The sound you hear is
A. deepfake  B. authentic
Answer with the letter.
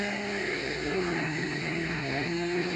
A